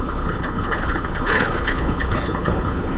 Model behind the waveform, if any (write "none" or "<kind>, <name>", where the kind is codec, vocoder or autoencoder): codec, HILCodec